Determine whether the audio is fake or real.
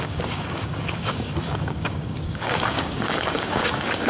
fake